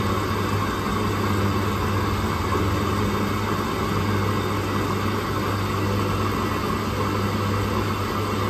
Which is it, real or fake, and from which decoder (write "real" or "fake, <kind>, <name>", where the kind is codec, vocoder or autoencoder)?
real